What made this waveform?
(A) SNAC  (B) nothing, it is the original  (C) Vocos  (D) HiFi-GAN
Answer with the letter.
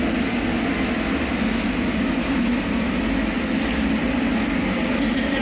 B